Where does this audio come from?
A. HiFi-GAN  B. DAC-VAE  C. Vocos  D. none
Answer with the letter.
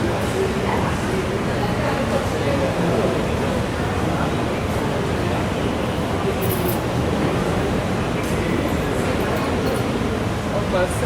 D